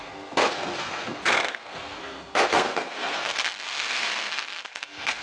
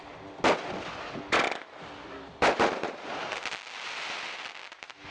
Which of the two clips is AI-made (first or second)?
first